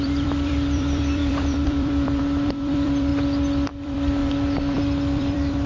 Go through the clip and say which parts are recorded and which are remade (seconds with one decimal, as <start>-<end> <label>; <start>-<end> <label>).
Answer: 0.0-3.1 remade; 3.1-3.7 recorded; 3.7-5.7 remade

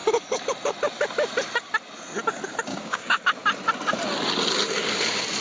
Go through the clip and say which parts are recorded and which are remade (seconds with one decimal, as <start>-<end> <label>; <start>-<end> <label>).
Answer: 0.0-2.7 recorded; 2.7-3.2 remade; 3.2-5.4 recorded

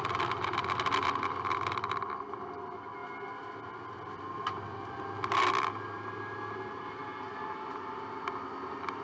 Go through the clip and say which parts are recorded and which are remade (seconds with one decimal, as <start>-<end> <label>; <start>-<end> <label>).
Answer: 0.0-9.0 recorded

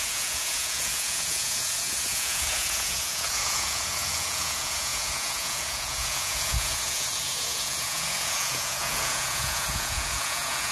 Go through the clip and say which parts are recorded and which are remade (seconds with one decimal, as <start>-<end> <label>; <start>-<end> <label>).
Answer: 0.0-10.7 remade

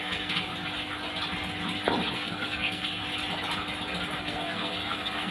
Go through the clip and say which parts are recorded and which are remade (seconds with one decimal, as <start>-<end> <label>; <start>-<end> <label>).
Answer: 0.0-0.5 remade; 0.5-2.1 recorded; 2.1-3.0 remade; 3.0-4.2 recorded; 4.2-5.3 remade

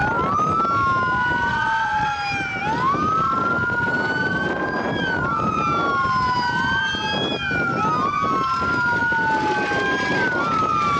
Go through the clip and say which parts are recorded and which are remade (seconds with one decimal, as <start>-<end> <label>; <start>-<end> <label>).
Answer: 0.0-1.5 recorded; 1.5-2.1 remade; 2.1-11.0 recorded

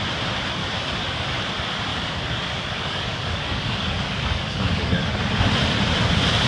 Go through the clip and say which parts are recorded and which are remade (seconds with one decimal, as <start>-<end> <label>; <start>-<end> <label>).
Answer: 0.0-0.6 recorded; 0.6-1.4 remade; 1.4-1.9 recorded; 1.9-5.3 remade; 5.3-6.5 recorded